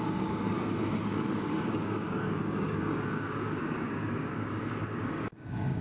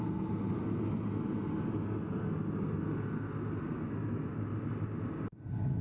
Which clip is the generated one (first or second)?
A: first